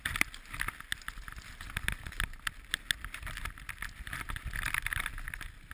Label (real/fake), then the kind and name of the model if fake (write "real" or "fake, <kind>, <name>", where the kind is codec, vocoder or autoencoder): real